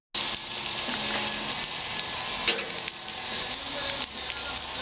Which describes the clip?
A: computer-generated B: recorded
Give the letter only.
B